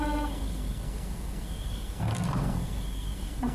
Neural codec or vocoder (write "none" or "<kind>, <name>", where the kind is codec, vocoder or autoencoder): codec, SNAC